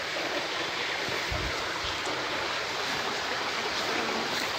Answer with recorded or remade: recorded